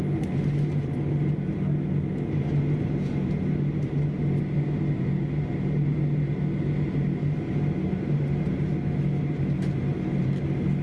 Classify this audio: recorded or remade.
recorded